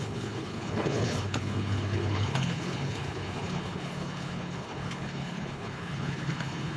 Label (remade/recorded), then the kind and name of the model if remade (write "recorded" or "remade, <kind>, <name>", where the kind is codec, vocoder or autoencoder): remade, codec, HILCodec